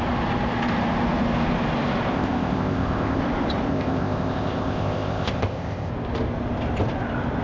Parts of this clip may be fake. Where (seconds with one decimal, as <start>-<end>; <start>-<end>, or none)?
2.1-3.2; 3.7-5.9